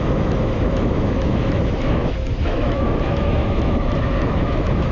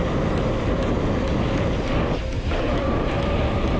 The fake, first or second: first